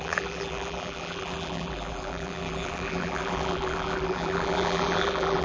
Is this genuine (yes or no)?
no